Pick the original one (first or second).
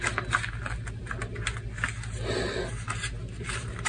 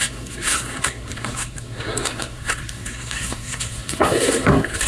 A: first